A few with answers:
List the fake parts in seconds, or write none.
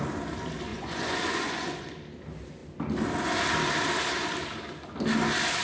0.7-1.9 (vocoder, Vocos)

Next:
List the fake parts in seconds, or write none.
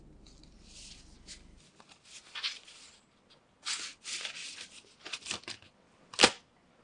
none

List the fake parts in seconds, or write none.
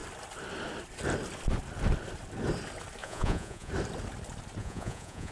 3.0-3.7 (vocoder, Vocos); 4.6-5.3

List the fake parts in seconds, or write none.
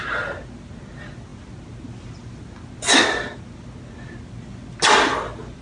none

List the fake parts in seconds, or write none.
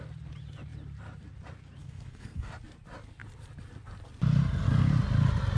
1.8-2.5 (codec, SNAC)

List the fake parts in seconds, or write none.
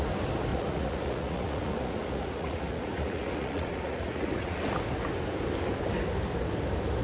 0.5-4.6 (vocoder, Vocos)